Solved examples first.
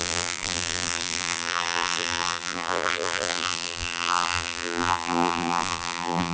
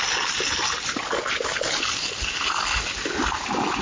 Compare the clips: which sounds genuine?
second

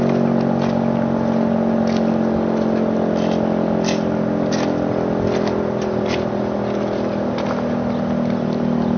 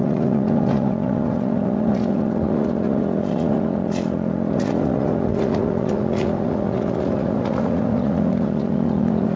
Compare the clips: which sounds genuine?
first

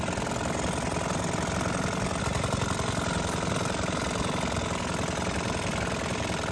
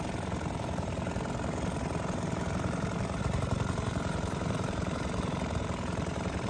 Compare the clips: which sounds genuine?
first